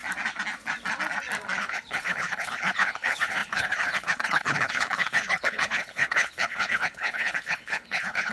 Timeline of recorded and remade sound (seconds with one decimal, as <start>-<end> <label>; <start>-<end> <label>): 0.0-1.6 recorded; 1.6-8.3 remade